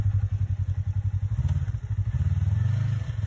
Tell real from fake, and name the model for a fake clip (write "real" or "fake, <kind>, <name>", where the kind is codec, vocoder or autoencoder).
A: real